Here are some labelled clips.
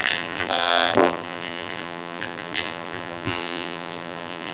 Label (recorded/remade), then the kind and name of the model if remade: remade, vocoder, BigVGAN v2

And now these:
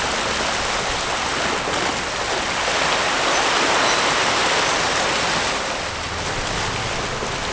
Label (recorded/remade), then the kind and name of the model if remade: recorded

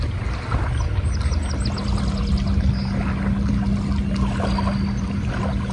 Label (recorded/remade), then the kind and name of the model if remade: recorded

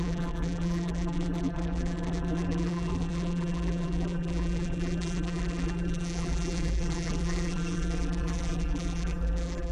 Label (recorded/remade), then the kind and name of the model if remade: remade, vocoder, BigVGAN v2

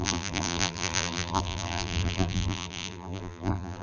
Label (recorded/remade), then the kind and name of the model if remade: remade, vocoder, BigVGAN v2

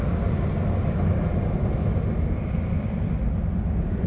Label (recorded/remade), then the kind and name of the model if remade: recorded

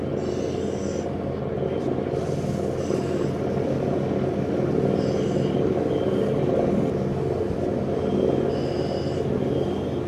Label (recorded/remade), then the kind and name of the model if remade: recorded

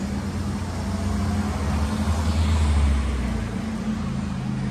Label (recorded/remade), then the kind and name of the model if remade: recorded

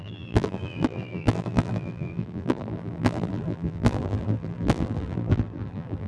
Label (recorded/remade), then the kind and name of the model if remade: remade, vocoder, BigVGAN v2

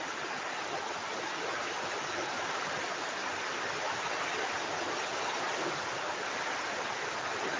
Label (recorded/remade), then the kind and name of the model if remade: recorded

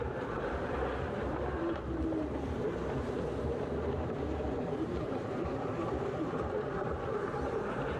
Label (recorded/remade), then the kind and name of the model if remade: remade, vocoder, BigVGAN v2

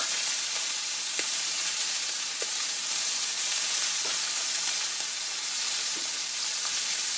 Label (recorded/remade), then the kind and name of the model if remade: remade, vocoder, BigVGAN v2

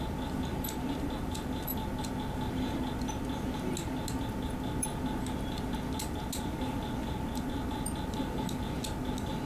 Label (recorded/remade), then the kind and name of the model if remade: recorded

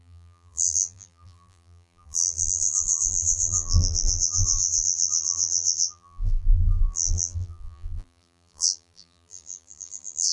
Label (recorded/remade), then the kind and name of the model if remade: remade, vocoder, BigVGAN v2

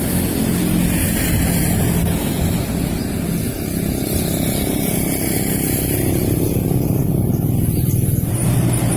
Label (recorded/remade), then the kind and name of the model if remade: recorded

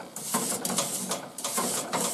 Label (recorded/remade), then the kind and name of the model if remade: recorded